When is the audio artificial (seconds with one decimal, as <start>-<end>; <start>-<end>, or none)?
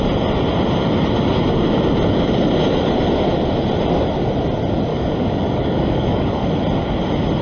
4.9-6.5